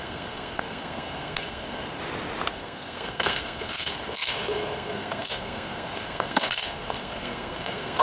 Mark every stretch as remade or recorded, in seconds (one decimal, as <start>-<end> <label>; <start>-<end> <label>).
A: 0.0-2.0 remade; 2.0-2.5 recorded; 2.5-8.0 remade